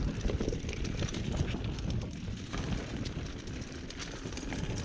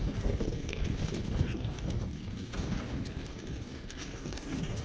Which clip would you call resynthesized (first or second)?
second